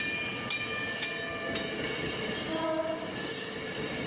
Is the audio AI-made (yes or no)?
no